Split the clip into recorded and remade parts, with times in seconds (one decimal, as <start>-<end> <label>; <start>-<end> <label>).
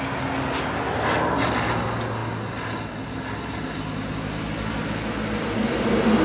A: 0.0-6.2 recorded